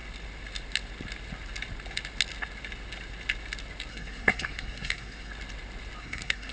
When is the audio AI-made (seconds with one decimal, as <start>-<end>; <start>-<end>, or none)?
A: 3.9-5.3; 6.0-6.5